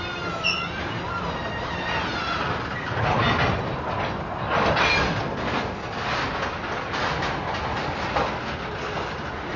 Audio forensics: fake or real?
real